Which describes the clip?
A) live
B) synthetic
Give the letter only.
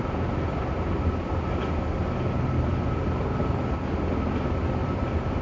A